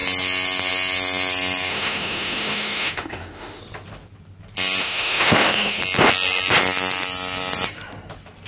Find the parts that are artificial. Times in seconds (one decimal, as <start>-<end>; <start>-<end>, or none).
1.7-3.6; 4.8-5.8